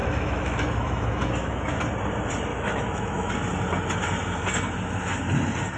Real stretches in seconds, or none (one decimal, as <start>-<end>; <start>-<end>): 1.8-2.5; 3.3-5.8